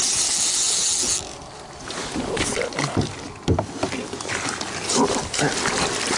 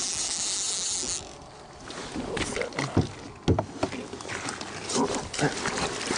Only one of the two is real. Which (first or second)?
second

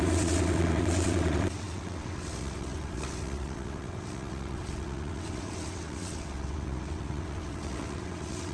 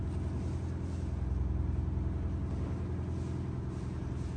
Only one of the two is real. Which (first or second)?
second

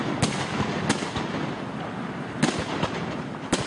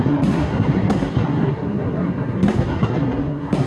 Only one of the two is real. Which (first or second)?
first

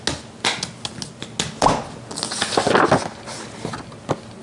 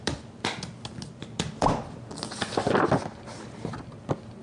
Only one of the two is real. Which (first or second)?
first